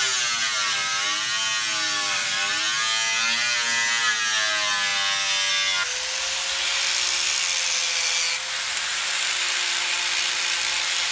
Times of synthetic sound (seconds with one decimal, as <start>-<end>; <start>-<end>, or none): none